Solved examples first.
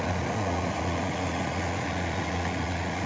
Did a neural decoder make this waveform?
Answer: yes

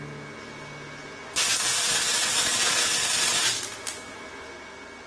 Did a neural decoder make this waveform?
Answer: no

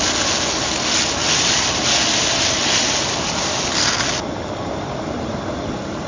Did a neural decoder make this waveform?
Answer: no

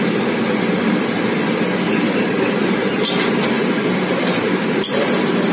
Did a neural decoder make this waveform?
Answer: no